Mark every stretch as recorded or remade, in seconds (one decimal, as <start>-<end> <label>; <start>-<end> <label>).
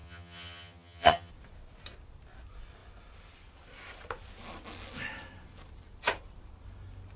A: 0.0-1.3 remade; 1.3-7.2 recorded